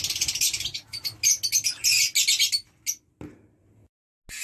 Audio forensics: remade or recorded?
recorded